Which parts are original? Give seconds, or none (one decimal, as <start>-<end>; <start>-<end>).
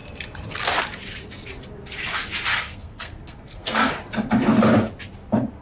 0.0-2.5; 3.9-5.6